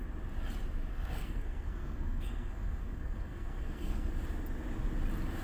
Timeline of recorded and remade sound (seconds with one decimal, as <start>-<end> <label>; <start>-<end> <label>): 0.0-0.9 recorded; 0.9-4.1 remade; 4.1-5.4 recorded